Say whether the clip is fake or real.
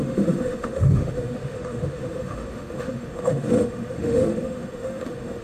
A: fake